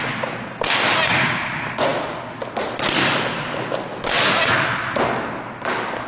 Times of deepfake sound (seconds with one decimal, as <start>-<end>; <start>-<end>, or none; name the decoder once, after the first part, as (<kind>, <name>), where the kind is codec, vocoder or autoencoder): none